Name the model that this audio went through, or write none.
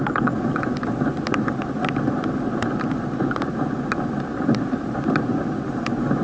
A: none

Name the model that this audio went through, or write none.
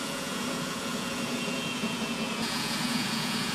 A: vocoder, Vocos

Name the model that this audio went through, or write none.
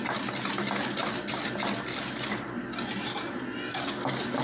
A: none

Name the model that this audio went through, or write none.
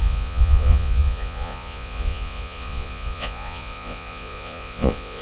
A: vocoder, Vocos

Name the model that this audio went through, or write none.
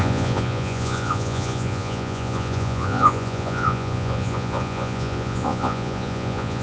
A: vocoder, Vocos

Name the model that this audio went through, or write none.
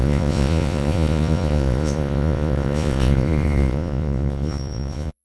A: vocoder, Vocos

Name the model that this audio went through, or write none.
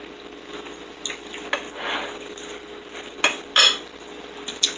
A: none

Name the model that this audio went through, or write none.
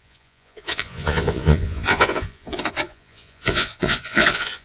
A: vocoder, Vocos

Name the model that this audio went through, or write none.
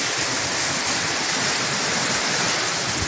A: none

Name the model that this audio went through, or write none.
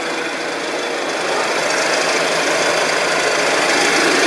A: none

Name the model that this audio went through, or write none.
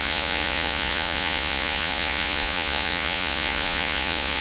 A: vocoder, Vocos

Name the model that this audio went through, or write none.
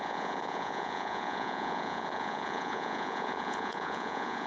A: vocoder, Vocos